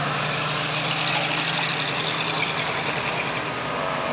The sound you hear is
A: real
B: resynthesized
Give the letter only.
A